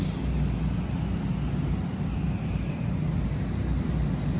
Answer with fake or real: real